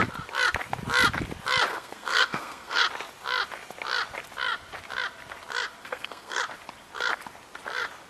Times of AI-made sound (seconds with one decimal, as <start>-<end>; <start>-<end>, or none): 1.7-2.8; 5.8-6.4